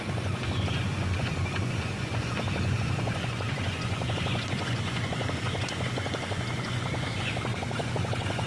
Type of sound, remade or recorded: remade